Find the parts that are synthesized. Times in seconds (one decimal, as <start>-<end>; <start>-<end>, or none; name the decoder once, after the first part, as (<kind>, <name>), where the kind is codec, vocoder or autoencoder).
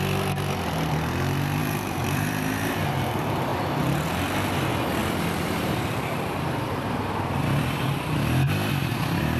1.6-2.8 (vocoder, BigVGAN v2); 5.0-6.8